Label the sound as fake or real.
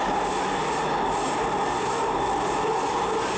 real